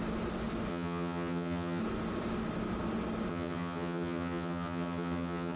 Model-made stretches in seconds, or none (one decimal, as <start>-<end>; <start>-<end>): 0.7-1.8; 3.3-5.6